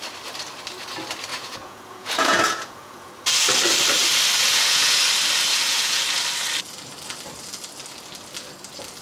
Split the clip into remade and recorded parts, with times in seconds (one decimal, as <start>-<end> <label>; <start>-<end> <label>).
0.0-1.3 recorded; 1.3-3.1 remade; 3.1-4.4 recorded; 4.4-5.0 remade; 5.0-5.5 recorded; 5.5-6.0 remade; 6.0-9.0 recorded